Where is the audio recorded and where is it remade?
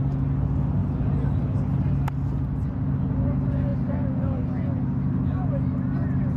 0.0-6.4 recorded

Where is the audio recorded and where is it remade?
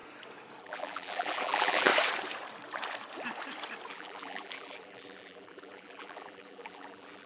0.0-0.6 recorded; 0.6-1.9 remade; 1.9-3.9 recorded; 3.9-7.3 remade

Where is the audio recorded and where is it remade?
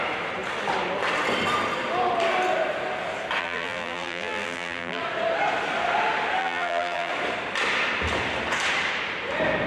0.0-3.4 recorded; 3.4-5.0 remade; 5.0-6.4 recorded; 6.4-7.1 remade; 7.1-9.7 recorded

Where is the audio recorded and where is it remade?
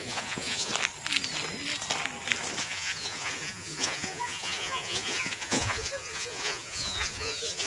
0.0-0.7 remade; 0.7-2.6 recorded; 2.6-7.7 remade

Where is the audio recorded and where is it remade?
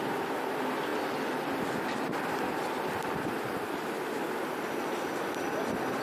0.0-0.9 recorded; 0.9-3.8 remade; 3.8-6.0 recorded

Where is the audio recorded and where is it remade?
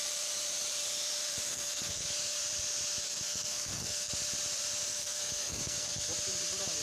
0.0-1.5 recorded; 1.5-2.1 remade; 2.1-3.0 recorded; 3.0-4.1 remade; 4.1-4.9 recorded; 4.9-6.1 remade; 6.1-6.8 recorded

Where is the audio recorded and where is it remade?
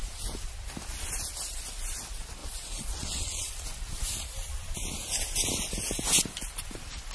0.0-2.4 recorded; 2.4-3.5 remade; 3.5-7.1 recorded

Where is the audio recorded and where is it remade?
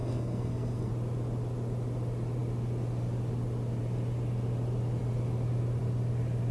0.0-0.9 remade; 0.9-6.5 recorded